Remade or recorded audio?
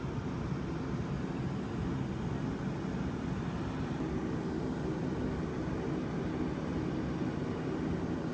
recorded